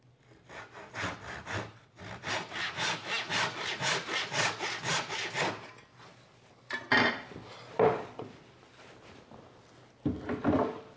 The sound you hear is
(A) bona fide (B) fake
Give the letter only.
A